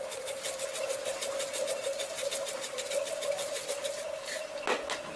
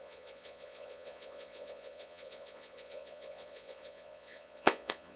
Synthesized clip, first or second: second